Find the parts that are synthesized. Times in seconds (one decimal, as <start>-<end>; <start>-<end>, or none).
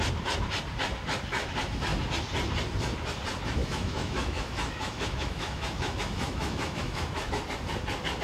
3.6-7.3